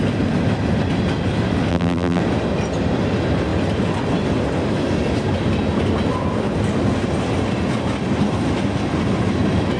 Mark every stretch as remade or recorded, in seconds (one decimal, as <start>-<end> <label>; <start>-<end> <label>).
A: 0.0-1.7 recorded; 1.7-2.2 remade; 2.2-9.8 recorded